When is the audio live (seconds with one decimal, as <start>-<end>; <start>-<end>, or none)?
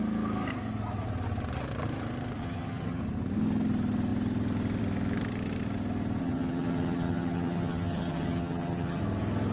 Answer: 0.0-2.4; 3.0-6.2; 9.0-9.5